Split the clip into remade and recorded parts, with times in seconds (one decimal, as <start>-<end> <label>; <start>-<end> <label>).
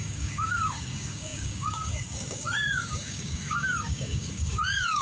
0.0-5.0 remade